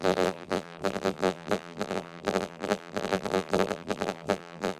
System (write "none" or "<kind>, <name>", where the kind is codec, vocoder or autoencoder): vocoder, BigVGAN v2